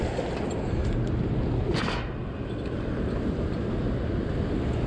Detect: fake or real real